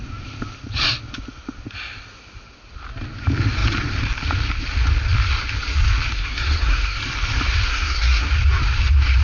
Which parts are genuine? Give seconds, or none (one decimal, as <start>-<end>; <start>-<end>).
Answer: 0.0-6.2; 7.0-7.7; 8.3-9.2